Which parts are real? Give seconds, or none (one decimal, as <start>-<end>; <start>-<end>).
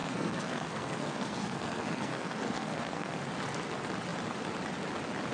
3.2-5.3